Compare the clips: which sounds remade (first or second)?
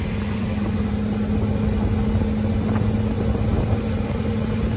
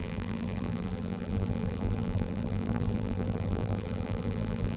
second